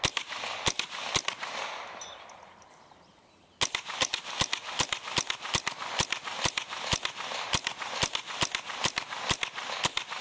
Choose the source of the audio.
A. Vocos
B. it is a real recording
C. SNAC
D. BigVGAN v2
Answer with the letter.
B